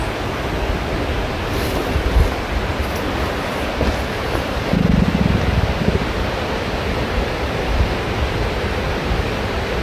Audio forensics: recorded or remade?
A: recorded